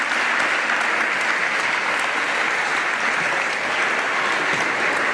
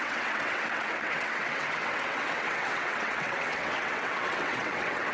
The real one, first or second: first